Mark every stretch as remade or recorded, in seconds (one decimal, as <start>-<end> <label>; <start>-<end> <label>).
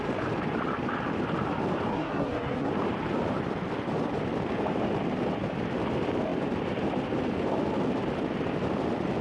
0.0-1.9 recorded; 1.9-2.7 remade; 2.7-9.2 recorded